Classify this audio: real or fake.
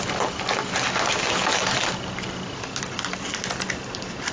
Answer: real